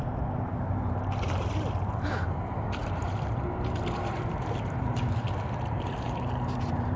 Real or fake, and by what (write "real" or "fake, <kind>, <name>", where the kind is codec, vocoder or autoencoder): fake, vocoder, BigVGAN v2